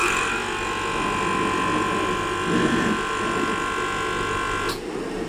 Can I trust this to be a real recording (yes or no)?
yes